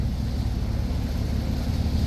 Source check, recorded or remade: recorded